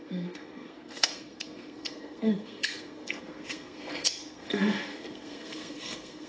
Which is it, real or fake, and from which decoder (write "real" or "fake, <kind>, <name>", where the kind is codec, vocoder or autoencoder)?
fake, codec, SNAC